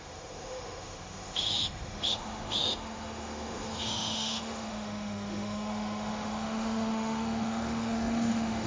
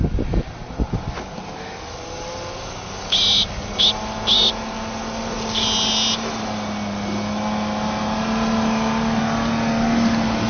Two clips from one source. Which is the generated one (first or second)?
first